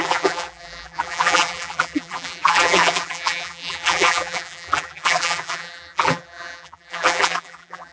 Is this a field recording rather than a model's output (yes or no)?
no